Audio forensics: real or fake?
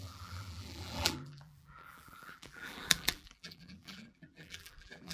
fake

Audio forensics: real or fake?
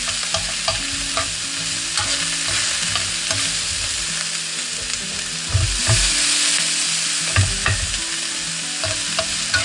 real